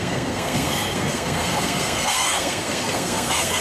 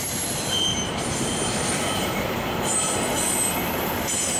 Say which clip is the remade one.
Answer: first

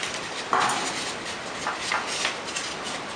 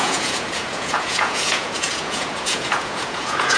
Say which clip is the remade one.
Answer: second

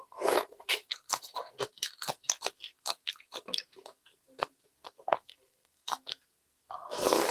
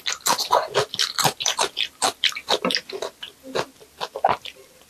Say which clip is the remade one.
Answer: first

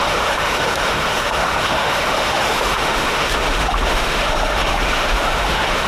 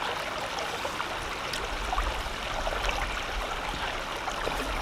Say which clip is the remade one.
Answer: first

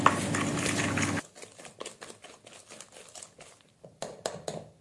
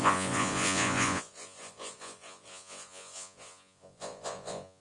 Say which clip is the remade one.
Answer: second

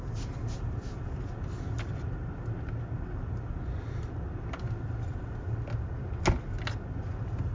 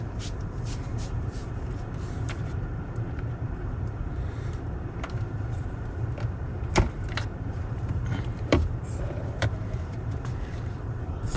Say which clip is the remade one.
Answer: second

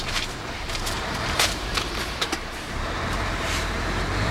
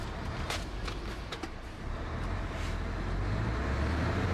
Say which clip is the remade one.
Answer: first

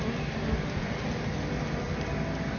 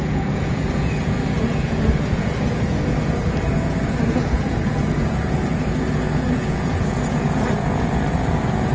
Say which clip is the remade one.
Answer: second